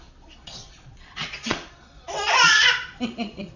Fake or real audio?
fake